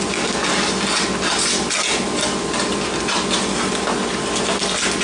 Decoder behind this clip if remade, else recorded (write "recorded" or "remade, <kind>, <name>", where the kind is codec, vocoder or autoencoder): recorded